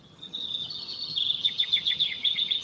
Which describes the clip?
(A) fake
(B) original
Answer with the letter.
A